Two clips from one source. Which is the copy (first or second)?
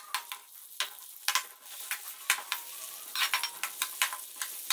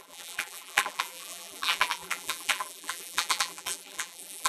second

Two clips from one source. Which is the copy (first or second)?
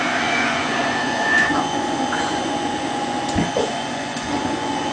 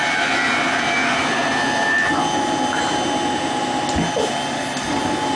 first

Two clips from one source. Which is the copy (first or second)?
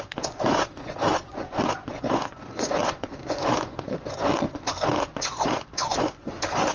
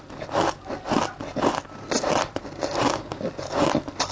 first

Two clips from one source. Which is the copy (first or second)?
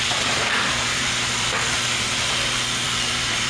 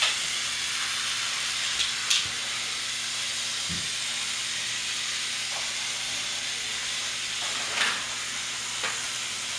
first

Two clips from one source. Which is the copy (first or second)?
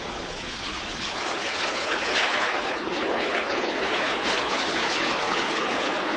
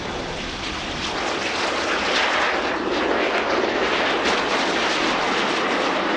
first